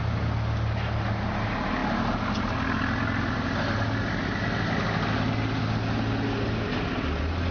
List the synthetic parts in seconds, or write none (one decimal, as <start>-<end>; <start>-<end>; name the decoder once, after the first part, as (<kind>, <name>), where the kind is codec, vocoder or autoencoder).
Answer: none